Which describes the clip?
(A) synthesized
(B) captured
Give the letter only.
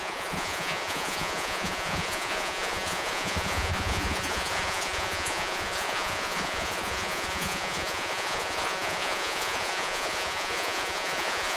A